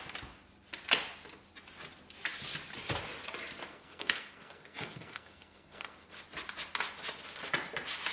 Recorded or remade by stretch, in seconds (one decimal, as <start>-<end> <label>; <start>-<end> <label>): 0.0-3.7 recorded; 3.7-6.1 remade; 6.1-8.1 recorded